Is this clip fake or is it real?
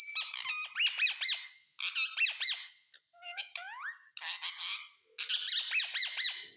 real